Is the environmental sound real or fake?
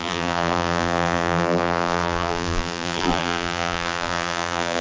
fake